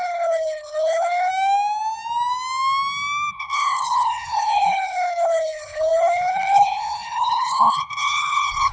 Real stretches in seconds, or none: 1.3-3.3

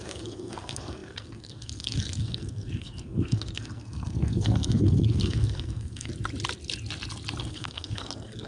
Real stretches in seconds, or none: 6.1-7.4

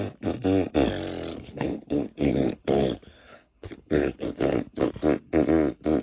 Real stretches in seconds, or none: 0.0-1.3; 4.9-6.0

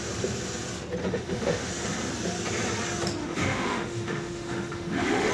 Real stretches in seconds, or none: 0.0-1.0; 1.7-3.2

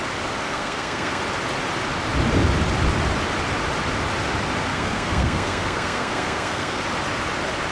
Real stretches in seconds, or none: 0.0-0.5; 1.2-4.7; 6.8-7.7

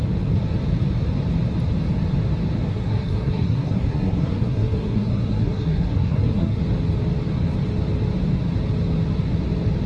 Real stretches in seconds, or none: 0.0-2.6; 6.6-9.9

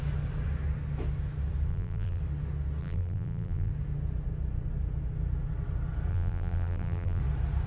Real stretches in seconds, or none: 0.0-1.7; 2.2-2.8; 3.7-6.1; 7.2-7.7

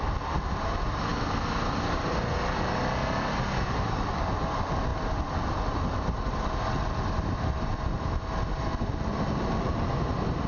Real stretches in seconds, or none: 0.0-10.5